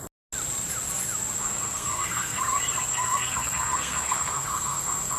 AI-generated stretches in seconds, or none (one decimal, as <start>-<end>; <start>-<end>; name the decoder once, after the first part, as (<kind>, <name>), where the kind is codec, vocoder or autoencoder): 1.4-2.4 (codec, SNAC); 2.9-5.2